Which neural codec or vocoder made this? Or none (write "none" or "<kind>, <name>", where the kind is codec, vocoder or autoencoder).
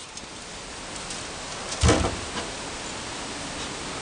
none